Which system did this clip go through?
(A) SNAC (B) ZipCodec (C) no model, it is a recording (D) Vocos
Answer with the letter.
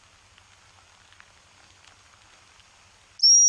C